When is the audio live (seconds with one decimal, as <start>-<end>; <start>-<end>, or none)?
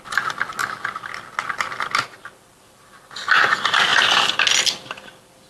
0.0-5.5